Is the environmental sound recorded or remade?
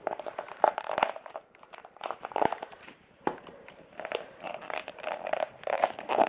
remade